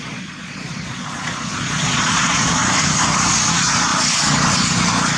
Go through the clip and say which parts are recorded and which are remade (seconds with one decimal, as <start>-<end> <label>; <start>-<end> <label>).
0.0-2.6 remade; 2.6-3.5 recorded; 3.5-3.9 remade; 3.9-5.2 recorded